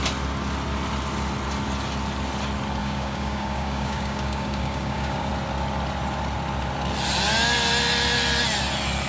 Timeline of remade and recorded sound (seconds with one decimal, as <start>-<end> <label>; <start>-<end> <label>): 0.0-2.8 recorded; 2.8-5.3 remade; 5.3-9.1 recorded